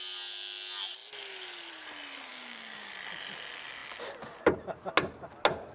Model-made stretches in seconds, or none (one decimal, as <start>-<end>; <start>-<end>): 2.3-2.9